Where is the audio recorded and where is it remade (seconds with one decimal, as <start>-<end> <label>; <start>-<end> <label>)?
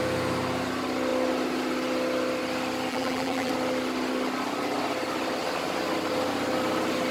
0.0-2.9 recorded; 2.9-3.5 remade; 3.5-7.1 recorded